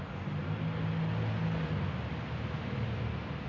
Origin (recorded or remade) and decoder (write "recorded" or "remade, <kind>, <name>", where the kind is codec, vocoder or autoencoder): recorded